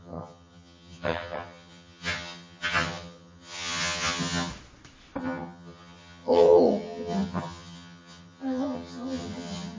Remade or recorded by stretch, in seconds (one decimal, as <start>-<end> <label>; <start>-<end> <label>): 0.0-4.5 remade; 4.5-5.2 recorded; 5.2-9.8 remade